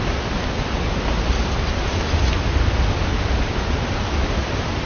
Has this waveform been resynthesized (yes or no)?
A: no